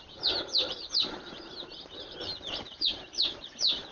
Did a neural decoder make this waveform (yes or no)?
yes